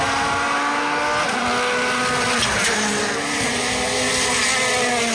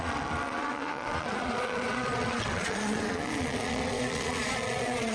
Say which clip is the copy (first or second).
second